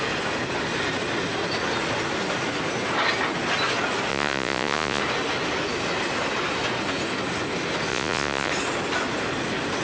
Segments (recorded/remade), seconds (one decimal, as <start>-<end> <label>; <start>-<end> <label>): 0.0-4.1 recorded; 4.1-5.0 remade; 5.0-7.9 recorded; 7.9-8.5 remade; 8.5-9.8 recorded